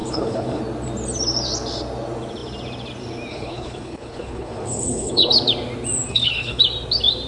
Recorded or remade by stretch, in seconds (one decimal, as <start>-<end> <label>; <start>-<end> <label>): 0.0-0.6 remade; 0.6-3.3 recorded; 3.3-5.3 remade; 5.3-6.1 recorded; 6.1-6.6 remade; 6.6-7.3 recorded